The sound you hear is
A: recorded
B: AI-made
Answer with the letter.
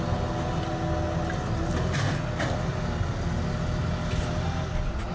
A